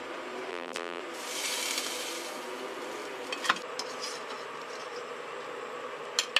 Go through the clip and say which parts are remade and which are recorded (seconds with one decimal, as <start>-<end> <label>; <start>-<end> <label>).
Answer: 0.0-0.5 recorded; 0.5-1.0 remade; 1.0-6.4 recorded